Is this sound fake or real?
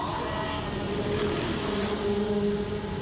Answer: real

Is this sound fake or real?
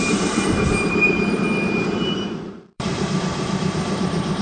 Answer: fake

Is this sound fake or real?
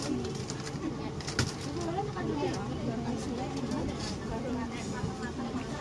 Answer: real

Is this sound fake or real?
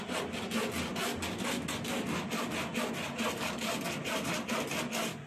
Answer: real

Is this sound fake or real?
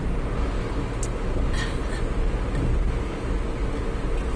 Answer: real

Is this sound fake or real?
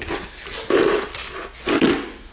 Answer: real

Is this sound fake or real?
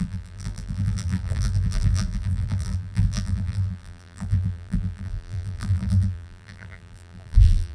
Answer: fake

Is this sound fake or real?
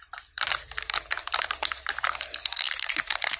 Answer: fake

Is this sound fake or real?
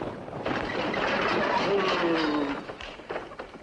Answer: real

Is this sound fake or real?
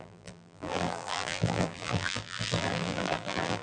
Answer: fake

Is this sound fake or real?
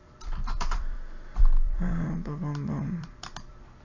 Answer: fake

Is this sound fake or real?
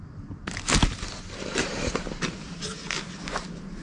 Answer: fake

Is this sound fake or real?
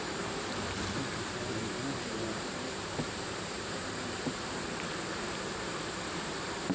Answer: fake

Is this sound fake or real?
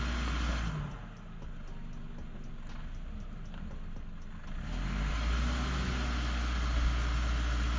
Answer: real